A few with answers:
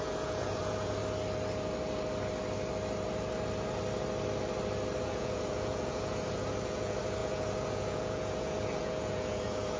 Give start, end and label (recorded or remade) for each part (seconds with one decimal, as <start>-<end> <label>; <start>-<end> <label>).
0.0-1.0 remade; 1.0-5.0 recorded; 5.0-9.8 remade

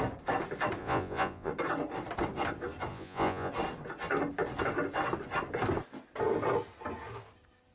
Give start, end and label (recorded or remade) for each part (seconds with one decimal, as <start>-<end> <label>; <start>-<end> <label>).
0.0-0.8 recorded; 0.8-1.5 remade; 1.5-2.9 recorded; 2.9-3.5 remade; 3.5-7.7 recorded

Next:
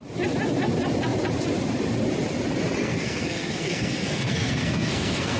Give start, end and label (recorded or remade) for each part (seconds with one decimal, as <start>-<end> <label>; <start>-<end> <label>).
0.0-2.8 recorded; 2.8-5.4 remade

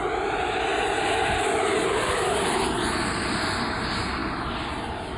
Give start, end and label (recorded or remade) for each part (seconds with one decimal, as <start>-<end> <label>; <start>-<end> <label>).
0.0-5.2 recorded

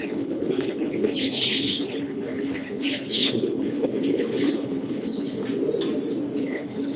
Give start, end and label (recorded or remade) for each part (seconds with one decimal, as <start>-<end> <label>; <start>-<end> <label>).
0.0-5.4 remade; 5.4-6.4 recorded; 6.4-7.0 remade

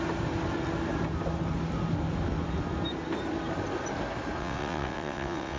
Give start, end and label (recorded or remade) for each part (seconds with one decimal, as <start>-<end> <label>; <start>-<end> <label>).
0.0-4.4 recorded; 4.4-5.6 remade

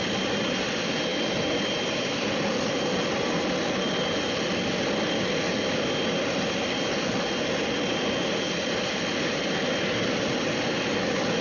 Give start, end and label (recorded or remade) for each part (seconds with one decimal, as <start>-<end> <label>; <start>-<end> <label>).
0.0-11.4 recorded